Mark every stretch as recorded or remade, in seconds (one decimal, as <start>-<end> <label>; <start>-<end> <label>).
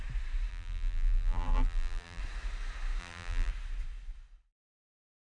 0.0-0.5 recorded; 0.5-2.2 remade; 2.2-3.0 recorded; 3.0-3.5 remade; 3.5-5.3 recorded